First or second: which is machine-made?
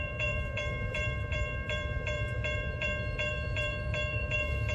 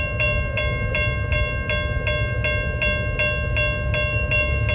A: first